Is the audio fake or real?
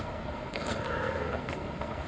fake